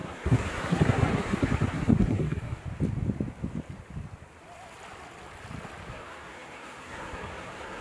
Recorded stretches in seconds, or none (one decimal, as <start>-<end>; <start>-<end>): 2.6-5.9

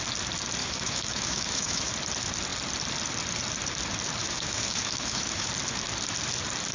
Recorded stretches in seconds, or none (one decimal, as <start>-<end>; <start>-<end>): 0.0-0.6; 1.9-4.2; 5.5-6.7

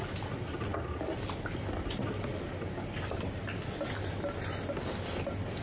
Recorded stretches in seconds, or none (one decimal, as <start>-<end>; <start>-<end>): 0.0-5.6

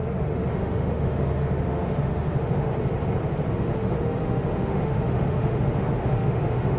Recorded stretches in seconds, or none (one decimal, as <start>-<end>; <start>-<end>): 2.7-3.5

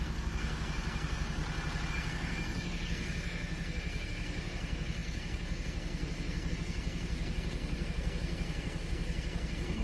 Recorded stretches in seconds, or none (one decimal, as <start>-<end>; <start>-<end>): 1.4-1.9